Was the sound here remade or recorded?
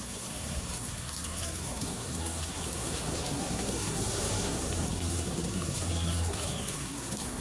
remade